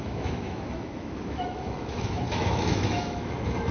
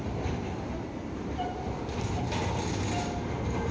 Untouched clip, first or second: second